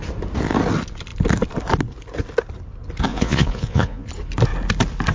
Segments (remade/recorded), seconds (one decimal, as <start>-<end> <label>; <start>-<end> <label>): 0.0-3.1 recorded; 3.1-4.1 remade; 4.1-5.1 recorded